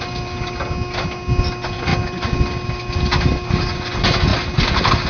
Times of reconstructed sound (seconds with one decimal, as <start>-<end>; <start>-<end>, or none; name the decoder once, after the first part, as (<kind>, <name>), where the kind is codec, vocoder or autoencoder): none